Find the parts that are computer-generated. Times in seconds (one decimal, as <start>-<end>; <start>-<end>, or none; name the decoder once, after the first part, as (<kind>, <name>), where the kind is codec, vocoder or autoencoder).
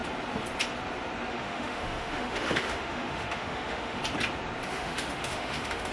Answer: 1.3-4.0 (autoencoder, DAC-VAE); 4.7-5.9